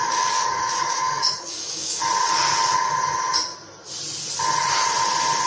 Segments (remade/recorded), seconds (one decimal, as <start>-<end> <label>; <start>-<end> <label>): 0.0-2.0 remade; 2.0-5.5 recorded